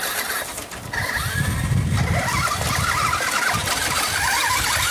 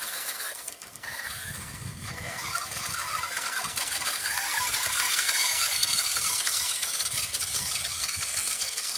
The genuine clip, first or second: first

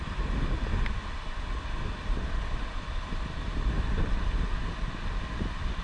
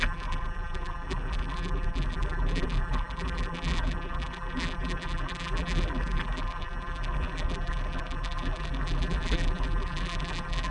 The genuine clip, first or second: first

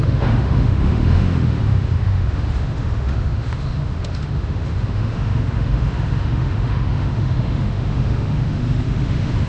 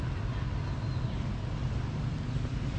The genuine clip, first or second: second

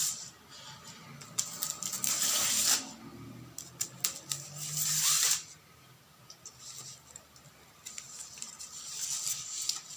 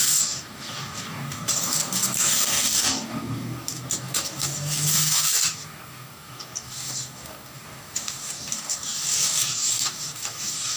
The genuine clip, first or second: first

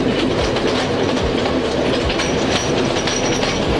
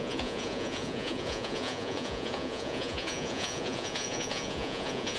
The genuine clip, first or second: first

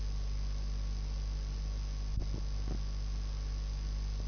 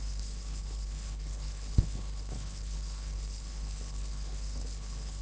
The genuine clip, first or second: first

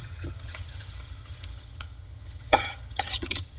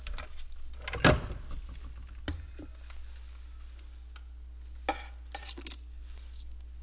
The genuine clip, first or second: second